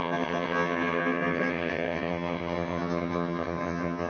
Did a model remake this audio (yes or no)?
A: yes